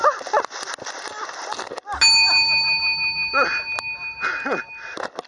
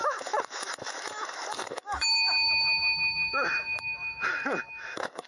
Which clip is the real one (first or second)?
first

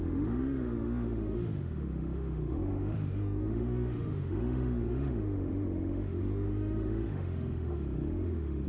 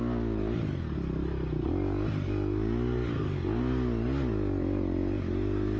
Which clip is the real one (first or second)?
second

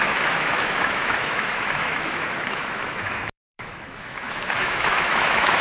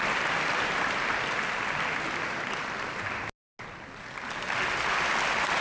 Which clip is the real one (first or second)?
second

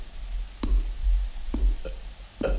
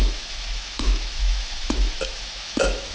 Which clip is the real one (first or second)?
first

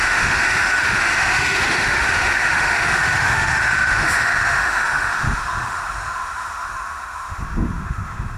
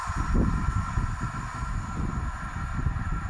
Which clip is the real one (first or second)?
second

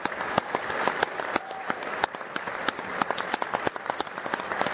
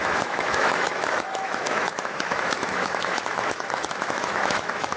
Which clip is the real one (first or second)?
first